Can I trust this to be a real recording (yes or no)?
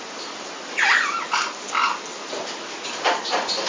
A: yes